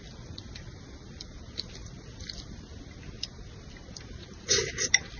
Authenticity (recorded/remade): recorded